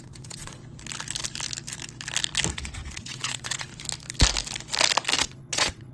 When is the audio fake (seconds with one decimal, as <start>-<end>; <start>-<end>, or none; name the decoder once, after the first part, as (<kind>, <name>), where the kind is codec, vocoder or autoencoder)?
0.0-0.6 (vocoder, WaveNeXt); 2.5-3.7; 5.2-5.9